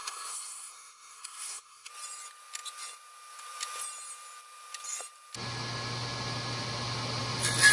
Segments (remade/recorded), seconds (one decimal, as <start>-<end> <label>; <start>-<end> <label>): 0.0-1.9 remade; 1.9-7.7 recorded